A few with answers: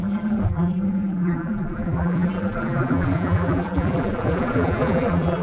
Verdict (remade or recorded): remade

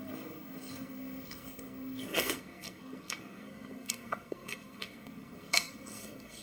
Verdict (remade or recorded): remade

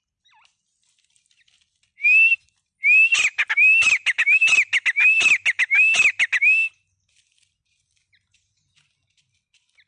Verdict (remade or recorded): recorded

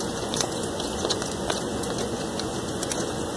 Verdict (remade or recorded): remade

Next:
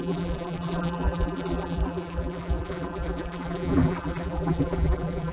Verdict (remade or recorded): remade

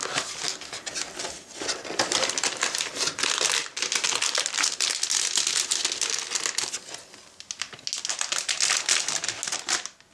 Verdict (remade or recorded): recorded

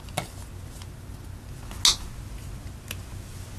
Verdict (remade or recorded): recorded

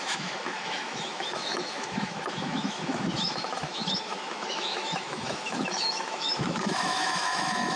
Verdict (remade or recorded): remade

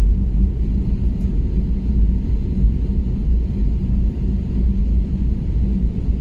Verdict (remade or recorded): remade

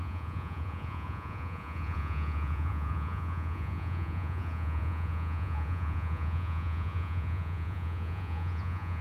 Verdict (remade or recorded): remade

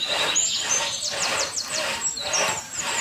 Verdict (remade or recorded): remade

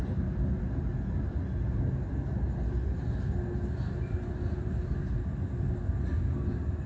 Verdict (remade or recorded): recorded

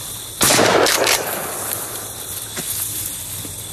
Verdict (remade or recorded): recorded